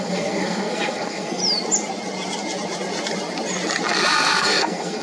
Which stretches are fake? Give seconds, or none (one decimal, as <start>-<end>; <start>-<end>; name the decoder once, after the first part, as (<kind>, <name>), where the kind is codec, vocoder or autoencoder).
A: 0.0-1.4 (codec, SNAC); 4.4-5.0